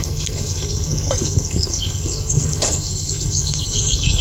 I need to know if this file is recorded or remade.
remade